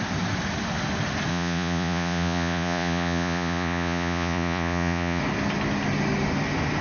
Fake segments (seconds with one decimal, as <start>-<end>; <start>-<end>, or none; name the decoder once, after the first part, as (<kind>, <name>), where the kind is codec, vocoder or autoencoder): 1.3-5.2 (vocoder, Vocos)